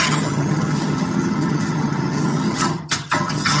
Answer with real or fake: fake